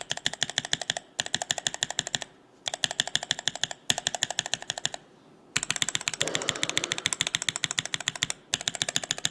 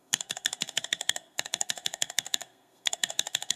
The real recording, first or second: first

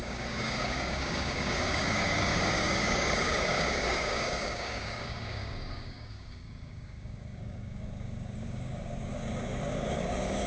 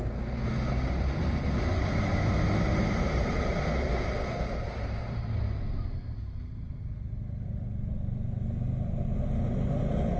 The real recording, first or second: second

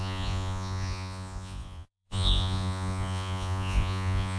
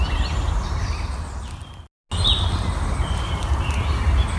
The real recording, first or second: second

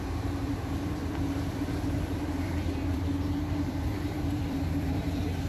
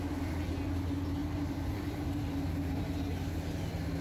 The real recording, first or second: second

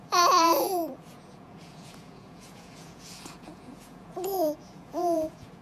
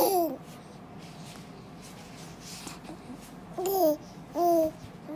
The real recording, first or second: second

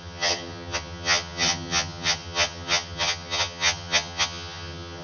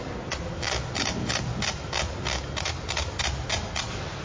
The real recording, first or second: second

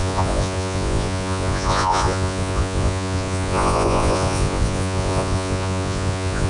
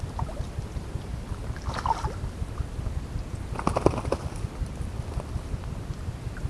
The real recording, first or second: second